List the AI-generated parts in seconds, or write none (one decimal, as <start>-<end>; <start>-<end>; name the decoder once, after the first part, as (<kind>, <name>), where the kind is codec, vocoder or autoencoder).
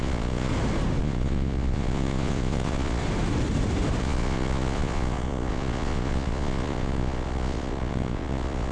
0.0-0.5 (vocoder, Vocos); 1.0-3.0; 4.0-8.7